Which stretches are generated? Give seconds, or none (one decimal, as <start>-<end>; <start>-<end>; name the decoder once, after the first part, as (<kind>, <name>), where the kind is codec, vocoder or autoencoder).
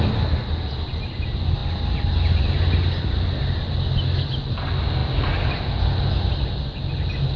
none